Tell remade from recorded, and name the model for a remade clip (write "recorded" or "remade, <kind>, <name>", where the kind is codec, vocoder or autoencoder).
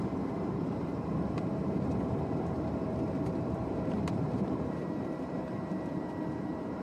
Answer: remade, vocoder, BigVGAN v2